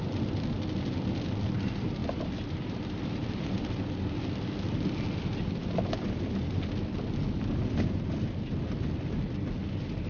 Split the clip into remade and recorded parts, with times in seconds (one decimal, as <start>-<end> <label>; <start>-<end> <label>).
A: 0.0-2.0 recorded; 2.0-4.0 remade; 4.0-10.1 recorded